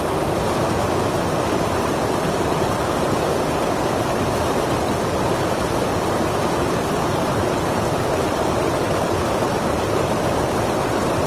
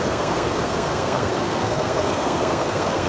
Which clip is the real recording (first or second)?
first